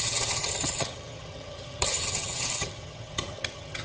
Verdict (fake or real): fake